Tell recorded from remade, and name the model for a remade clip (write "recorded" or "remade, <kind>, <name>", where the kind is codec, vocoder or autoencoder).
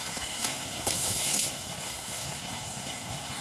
remade, codec, SNAC